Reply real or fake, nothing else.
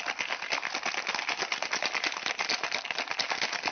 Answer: real